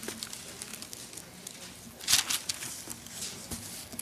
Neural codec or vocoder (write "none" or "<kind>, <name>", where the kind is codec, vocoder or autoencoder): none